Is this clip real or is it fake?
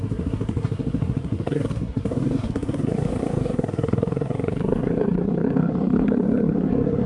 fake